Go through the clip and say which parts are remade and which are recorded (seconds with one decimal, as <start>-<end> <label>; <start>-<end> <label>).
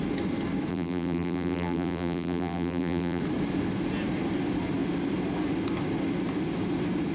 0.0-0.7 recorded; 0.7-3.2 remade; 3.2-7.1 recorded